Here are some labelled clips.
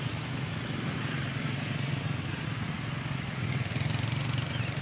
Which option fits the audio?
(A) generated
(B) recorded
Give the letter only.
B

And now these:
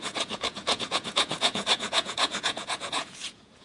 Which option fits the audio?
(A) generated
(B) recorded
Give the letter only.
A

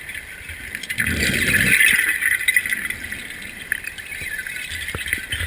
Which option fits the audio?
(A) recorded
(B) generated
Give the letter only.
A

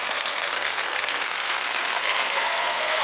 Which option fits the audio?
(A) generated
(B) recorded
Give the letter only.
A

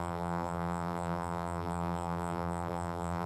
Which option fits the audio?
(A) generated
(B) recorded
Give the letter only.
A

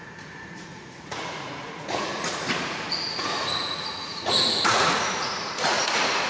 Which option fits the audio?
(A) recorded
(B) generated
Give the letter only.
B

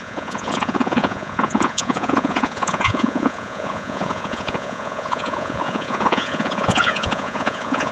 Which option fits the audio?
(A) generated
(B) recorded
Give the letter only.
A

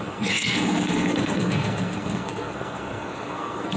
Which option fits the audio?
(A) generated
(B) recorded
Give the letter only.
A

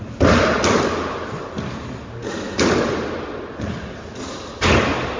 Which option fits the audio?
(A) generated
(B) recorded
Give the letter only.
B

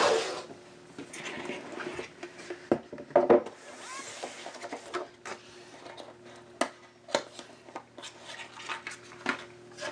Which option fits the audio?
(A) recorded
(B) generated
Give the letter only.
A